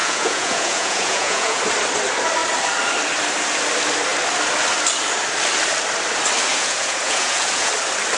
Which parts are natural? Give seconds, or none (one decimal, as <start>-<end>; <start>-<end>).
1.6-6.5; 7.7-8.2